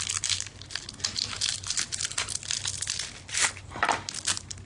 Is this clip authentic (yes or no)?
yes